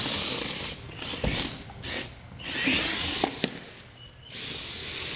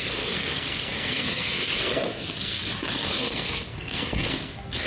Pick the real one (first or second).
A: first